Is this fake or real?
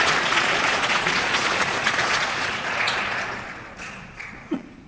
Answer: fake